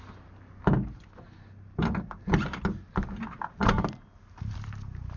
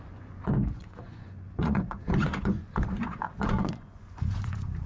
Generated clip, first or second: second